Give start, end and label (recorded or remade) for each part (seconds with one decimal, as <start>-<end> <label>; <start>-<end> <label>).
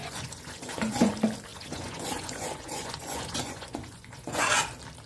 0.0-1.1 remade; 1.1-1.5 recorded; 1.5-4.6 remade; 4.6-5.1 recorded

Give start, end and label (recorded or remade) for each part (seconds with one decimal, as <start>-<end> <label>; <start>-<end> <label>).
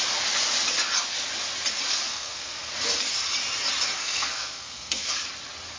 0.0-2.1 recorded; 2.1-2.7 remade; 2.7-4.0 recorded; 4.0-5.1 remade; 5.1-5.8 recorded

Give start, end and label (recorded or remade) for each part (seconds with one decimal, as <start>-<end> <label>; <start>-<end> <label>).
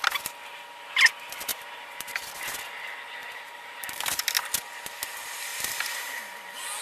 0.0-1.5 recorded; 1.5-2.3 remade; 2.3-3.2 recorded; 3.2-4.3 remade; 4.3-5.5 recorded; 5.5-6.1 remade; 6.1-6.8 recorded